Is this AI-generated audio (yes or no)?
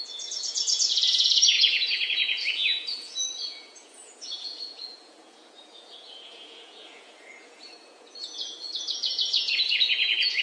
yes